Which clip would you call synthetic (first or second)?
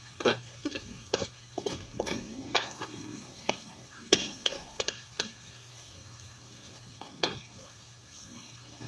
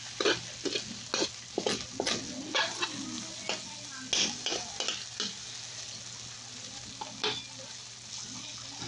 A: first